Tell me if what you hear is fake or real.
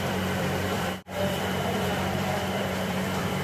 fake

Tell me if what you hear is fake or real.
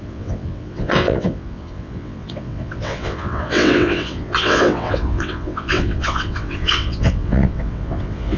fake